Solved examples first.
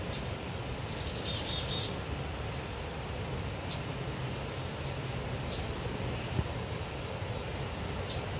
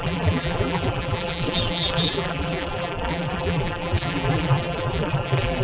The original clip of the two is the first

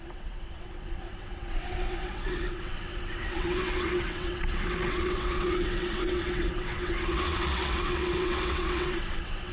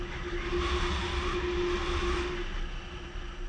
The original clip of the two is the second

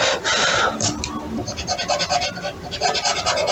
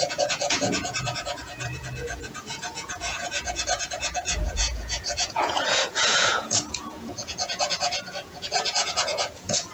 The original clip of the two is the first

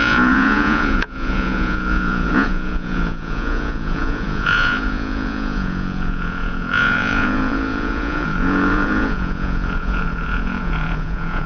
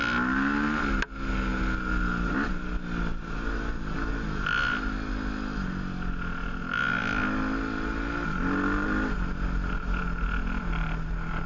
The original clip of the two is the second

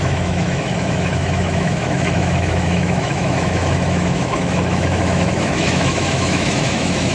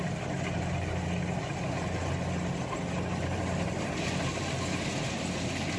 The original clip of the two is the second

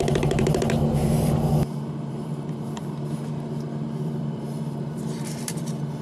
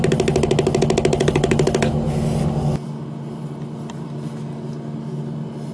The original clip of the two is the second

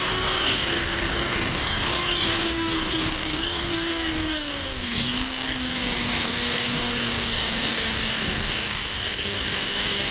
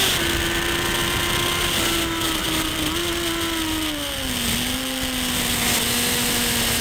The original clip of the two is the second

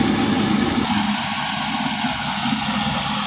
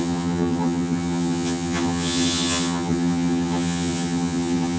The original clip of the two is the first